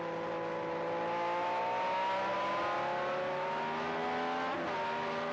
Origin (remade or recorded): recorded